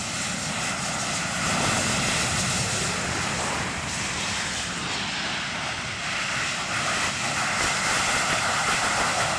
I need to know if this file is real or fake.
real